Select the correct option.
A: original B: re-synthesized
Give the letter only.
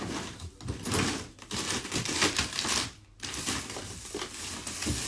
A